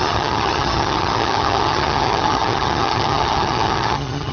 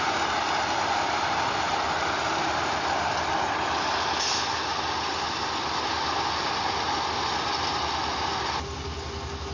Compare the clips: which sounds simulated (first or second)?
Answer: first